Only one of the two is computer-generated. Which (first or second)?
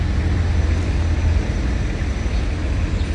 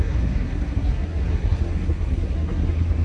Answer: second